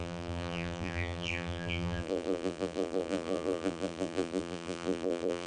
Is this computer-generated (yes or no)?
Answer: yes